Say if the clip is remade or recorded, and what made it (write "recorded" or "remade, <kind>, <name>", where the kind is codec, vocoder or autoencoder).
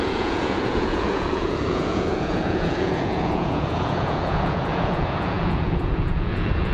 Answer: remade, vocoder, Vocos